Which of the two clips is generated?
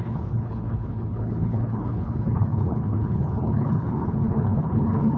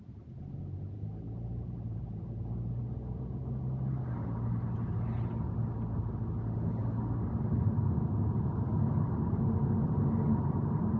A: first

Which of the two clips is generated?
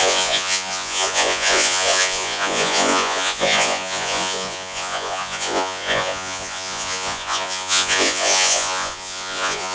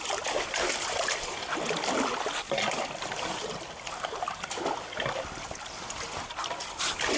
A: first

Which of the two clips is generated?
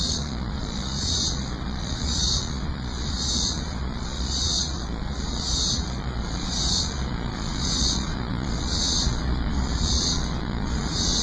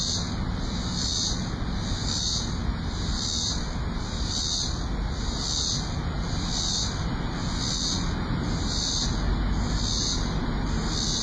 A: first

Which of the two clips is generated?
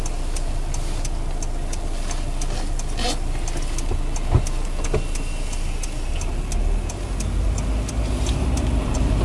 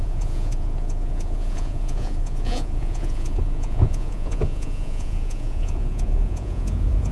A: second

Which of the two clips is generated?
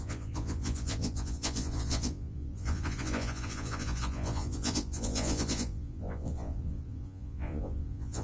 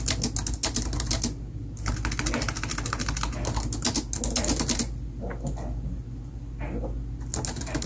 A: first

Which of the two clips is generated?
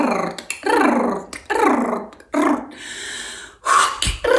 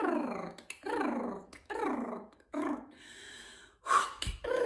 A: second